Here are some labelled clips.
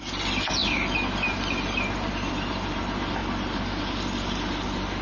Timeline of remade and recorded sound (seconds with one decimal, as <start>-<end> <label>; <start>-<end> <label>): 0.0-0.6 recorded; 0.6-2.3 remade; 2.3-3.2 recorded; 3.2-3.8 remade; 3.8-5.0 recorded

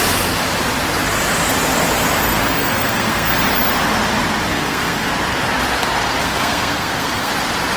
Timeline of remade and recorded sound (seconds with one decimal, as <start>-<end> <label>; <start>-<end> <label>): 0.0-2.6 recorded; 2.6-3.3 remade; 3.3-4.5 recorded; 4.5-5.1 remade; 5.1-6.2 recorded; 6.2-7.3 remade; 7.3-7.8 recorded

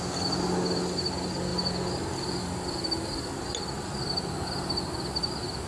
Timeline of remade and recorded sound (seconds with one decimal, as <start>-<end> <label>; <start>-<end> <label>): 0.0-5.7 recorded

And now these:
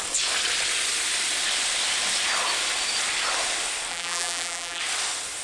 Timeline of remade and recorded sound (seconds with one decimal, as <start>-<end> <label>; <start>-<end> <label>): 0.0-3.9 recorded; 3.9-4.8 remade; 4.8-5.4 recorded